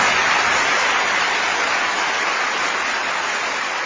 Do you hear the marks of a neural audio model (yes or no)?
no